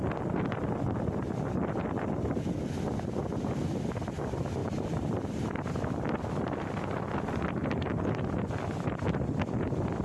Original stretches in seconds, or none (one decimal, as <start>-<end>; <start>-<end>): 0.0-4.6; 5.2-7.6; 8.6-10.0

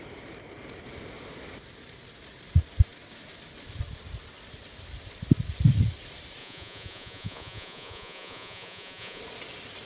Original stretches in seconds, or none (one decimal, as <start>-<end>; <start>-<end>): 0.0-6.4; 9.2-9.9

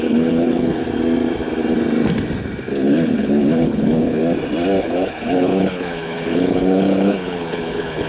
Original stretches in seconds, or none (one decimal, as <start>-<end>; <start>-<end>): 0.8-2.7; 4.2-4.8

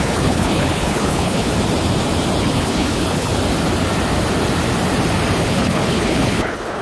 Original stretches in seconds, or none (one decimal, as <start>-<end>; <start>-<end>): 1.5-2.4; 3.3-5.4

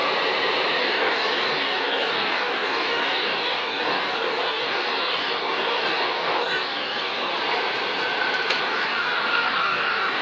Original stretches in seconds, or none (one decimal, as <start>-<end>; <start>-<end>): 0.0-0.8; 7.3-8.6

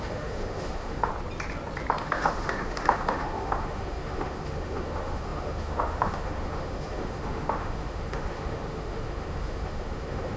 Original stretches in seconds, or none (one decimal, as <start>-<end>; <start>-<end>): 1.1-2.0